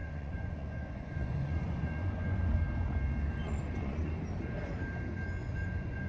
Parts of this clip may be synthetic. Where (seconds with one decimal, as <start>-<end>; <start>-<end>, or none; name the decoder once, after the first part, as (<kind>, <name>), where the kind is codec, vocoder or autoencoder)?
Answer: 0.0-2.5 (vocoder, Vocos); 3.4-4.1; 5.4-6.1